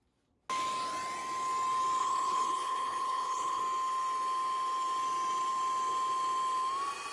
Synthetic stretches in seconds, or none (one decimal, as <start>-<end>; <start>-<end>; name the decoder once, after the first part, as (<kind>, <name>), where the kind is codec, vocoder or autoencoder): 2.0-3.6 (codec, HILCodec)